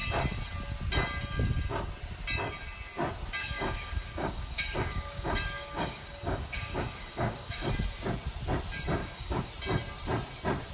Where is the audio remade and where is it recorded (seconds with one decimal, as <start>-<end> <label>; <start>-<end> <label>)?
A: 0.0-3.4 recorded; 3.4-7.7 remade; 7.7-9.0 recorded; 9.0-9.5 remade; 9.5-10.7 recorded

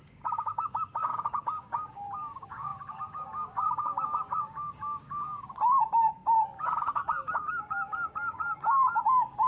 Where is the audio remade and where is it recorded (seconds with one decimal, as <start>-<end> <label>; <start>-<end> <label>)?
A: 0.0-9.5 remade

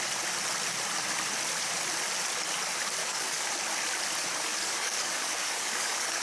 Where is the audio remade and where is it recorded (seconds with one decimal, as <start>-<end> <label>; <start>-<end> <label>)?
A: 0.0-3.0 recorded; 3.0-3.5 remade; 3.5-4.5 recorded; 4.5-6.2 remade